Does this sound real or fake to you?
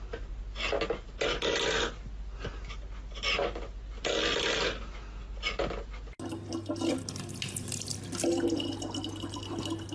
real